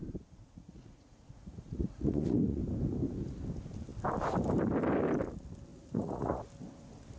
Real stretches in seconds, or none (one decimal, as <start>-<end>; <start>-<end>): 0.0-0.4; 2.6-5.7; 6.4-7.2